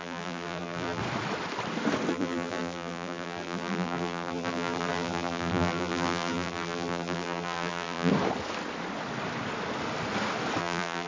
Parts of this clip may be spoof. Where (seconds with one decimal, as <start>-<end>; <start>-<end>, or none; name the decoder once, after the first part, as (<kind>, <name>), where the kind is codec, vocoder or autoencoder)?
0.0-1.0 (vocoder, BigVGAN v2); 2.1-8.1; 10.6-11.1